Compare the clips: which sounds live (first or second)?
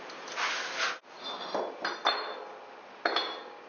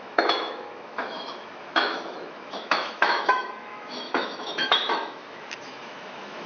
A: first